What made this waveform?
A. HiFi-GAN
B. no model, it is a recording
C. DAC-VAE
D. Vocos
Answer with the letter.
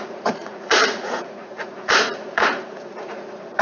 D